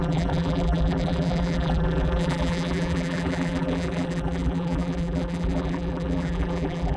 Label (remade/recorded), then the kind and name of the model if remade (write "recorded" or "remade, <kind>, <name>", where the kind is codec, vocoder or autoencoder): remade, vocoder, BigVGAN v2